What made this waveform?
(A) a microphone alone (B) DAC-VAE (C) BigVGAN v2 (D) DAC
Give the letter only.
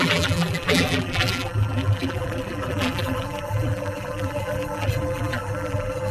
C